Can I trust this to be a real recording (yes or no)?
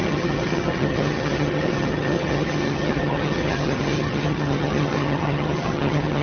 no